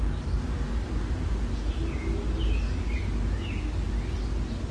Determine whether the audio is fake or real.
real